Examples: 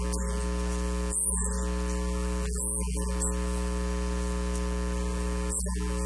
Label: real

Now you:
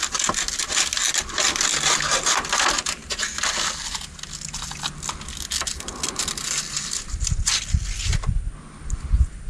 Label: real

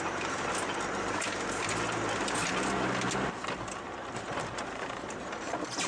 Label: real